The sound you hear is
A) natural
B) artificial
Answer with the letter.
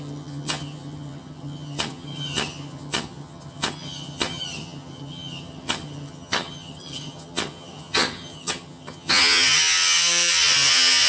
B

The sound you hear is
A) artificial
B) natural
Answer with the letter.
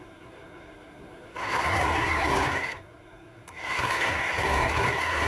A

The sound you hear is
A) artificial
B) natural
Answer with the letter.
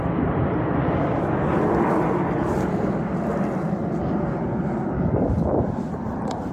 B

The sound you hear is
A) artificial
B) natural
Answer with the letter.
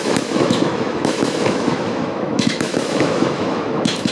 A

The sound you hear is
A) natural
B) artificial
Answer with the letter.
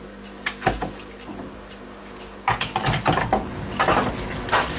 A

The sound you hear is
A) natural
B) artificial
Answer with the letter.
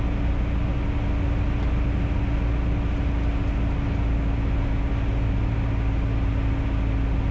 A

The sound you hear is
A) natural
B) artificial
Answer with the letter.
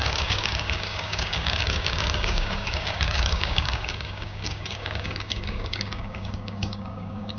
B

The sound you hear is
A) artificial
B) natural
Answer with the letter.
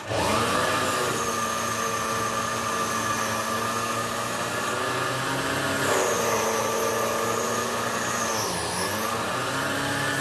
B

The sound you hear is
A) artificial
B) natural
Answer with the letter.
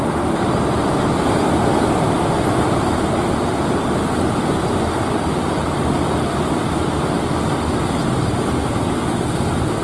B